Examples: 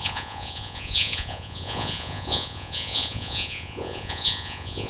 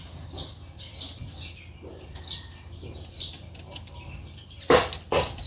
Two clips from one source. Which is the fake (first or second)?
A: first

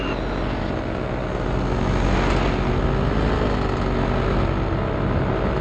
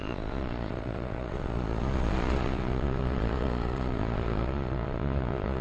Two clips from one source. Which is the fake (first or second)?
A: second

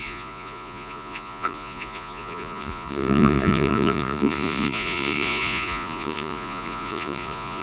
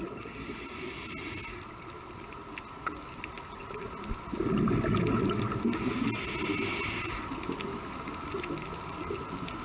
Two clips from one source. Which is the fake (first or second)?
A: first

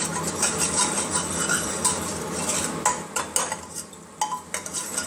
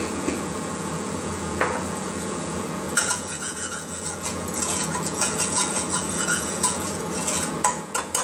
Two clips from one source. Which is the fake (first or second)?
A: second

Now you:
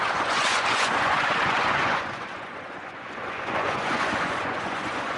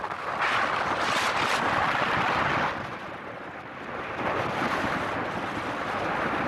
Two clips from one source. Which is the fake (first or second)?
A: first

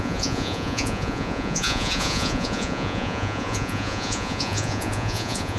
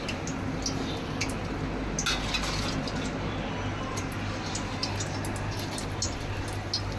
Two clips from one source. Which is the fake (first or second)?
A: first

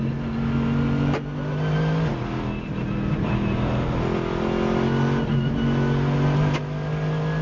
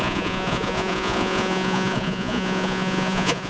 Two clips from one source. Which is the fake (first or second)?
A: second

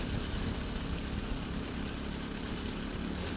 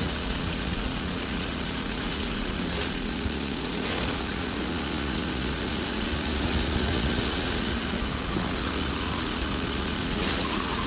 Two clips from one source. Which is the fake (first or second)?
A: second